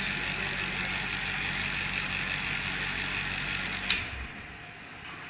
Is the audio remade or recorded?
recorded